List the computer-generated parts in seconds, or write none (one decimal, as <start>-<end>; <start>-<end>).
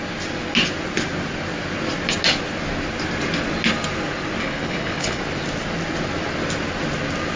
4.4-5.2